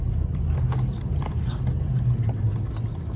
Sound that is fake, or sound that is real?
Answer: real